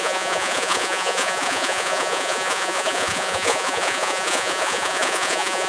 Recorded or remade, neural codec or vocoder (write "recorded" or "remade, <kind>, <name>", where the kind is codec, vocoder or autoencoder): remade, vocoder, Vocos